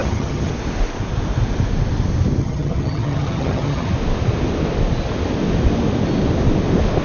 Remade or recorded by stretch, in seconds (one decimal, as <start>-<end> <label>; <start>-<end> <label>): 0.0-0.5 remade; 0.5-2.4 recorded; 2.4-3.9 remade; 3.9-7.0 recorded